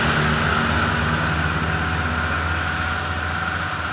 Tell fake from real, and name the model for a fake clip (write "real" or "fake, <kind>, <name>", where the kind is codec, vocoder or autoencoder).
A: real